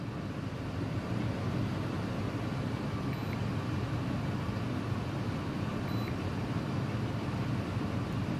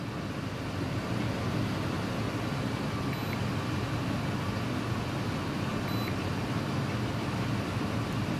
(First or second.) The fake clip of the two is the first